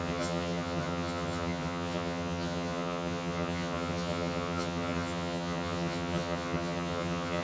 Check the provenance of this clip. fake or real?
fake